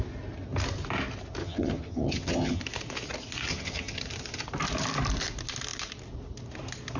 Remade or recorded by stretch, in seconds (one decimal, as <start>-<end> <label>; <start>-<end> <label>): 0.0-1.4 recorded; 1.4-2.6 remade; 2.6-3.5 recorded; 3.5-4.0 remade; 4.0-7.0 recorded